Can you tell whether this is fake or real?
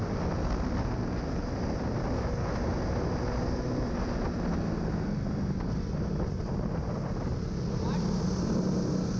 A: real